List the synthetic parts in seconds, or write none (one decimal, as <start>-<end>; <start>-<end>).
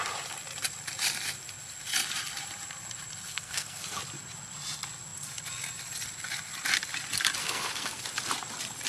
3.3-4.0; 7.4-8.0